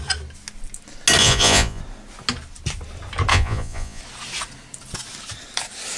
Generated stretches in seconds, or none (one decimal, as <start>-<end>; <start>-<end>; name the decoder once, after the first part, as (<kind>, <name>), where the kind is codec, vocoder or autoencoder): 1.2-1.8 (vocoder, Vocos); 3.3-4.0